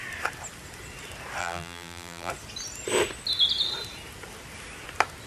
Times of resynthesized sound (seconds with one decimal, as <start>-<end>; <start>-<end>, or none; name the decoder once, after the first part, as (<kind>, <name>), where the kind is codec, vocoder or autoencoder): 1.4-2.3 (vocoder, BigVGAN v2)